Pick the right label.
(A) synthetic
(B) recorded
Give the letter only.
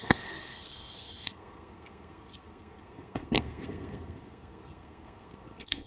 A